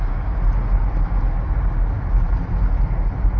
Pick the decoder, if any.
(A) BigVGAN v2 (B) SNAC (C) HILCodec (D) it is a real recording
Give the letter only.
D